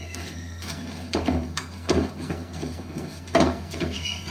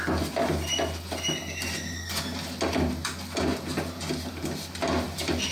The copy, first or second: first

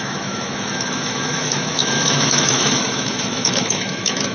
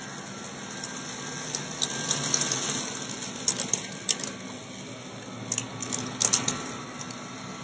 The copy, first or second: first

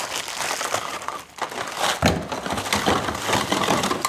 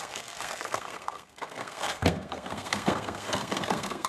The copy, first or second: second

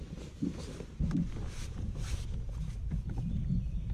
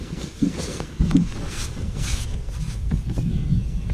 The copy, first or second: second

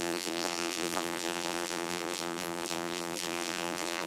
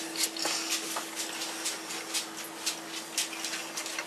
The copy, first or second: first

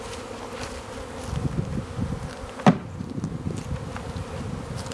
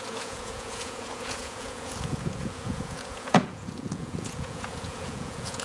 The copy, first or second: second